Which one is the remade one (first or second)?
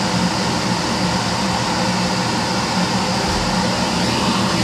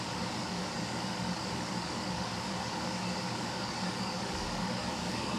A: second